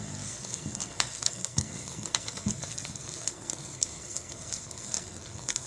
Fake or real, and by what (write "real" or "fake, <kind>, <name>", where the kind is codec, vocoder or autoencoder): fake, codec, SNAC